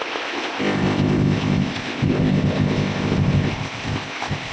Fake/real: fake